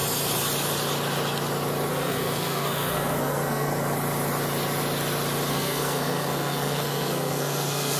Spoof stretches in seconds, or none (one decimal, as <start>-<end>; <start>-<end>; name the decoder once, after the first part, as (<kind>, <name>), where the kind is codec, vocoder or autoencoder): 1.9-3.7 (codec, SNAC); 5.5-8.0